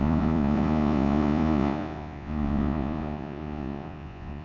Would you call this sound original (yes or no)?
no